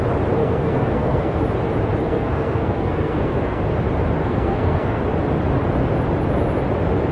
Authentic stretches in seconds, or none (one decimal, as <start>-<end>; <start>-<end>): 0.0-0.4; 1.4-2.0; 3.6-4.2; 5.0-7.1